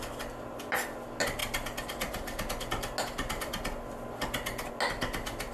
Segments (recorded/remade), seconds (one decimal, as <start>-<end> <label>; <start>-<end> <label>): 0.0-5.5 recorded